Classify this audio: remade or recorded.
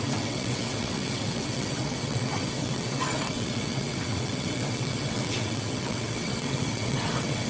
remade